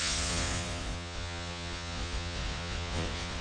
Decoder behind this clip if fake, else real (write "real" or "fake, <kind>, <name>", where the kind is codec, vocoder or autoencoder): fake, vocoder, Vocos